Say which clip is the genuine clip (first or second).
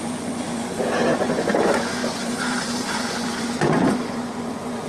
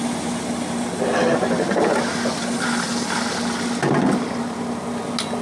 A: second